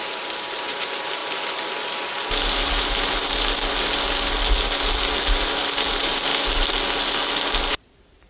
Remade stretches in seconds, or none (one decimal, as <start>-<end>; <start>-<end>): 0.0-3.2; 5.7-6.3; 7.7-8.3

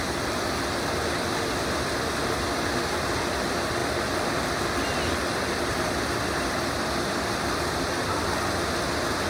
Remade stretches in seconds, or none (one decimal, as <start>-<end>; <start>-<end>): none

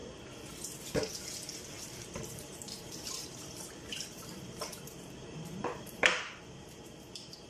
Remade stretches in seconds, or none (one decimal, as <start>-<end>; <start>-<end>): 1.8-7.5

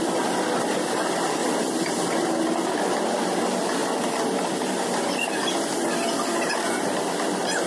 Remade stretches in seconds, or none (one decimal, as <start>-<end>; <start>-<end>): 1.4-2.3; 3.8-6.5

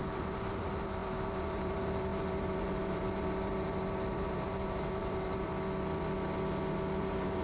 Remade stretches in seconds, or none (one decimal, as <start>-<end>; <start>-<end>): 0.0-5.5; 7.0-7.4

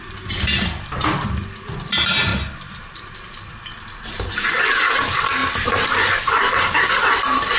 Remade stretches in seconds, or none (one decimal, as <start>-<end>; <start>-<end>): 0.0-2.3; 3.5-5.4; 6.9-7.6